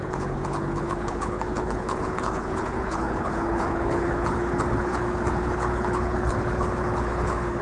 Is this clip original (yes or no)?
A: no